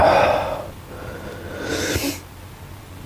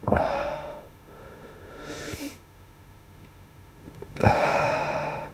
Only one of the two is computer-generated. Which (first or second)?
second